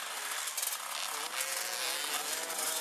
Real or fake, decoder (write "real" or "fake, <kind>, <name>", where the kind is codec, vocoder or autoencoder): real